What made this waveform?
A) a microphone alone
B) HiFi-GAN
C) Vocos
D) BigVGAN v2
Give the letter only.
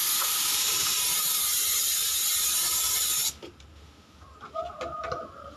A